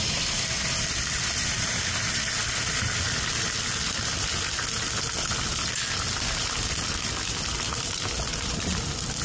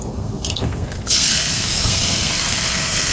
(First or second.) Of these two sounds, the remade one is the second